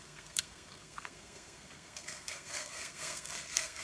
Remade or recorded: remade